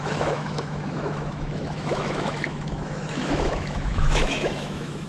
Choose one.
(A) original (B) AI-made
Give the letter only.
B